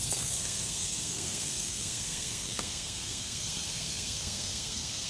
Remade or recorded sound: remade